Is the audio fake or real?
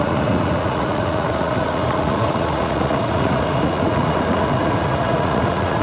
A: fake